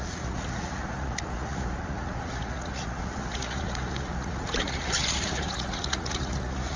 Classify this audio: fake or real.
fake